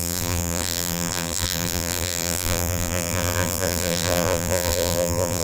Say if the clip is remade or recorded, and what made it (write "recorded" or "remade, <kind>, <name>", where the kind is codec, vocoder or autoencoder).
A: remade, vocoder, BigVGAN v2